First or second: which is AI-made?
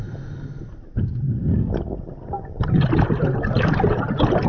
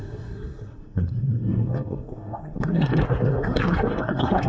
second